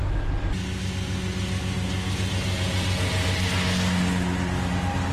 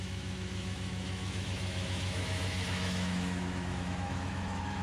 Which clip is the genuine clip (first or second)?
first